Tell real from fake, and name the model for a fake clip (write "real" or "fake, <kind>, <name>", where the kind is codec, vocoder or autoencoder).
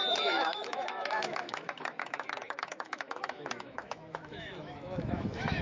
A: fake, autoencoder, DAC-VAE